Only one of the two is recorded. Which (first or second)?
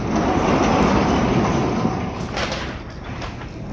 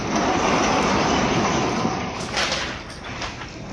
first